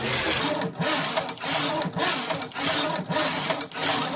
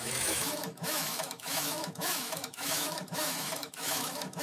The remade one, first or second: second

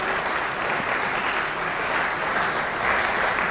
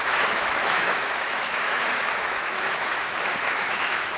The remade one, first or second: second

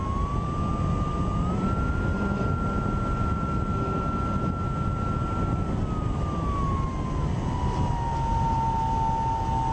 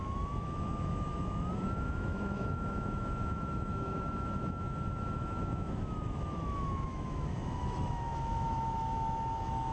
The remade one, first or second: second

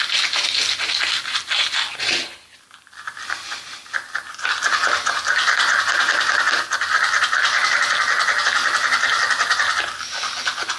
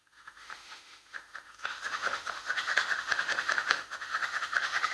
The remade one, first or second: second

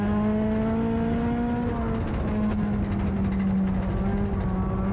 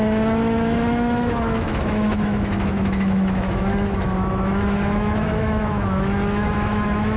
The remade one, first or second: second